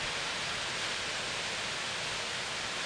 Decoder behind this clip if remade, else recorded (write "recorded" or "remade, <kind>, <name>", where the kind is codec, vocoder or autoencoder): recorded